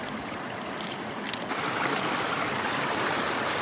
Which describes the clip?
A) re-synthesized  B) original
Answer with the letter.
B